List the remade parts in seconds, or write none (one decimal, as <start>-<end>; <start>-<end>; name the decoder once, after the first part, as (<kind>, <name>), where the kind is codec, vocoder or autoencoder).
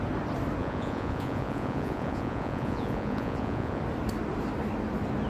0.6-3.8 (vocoder, Vocos)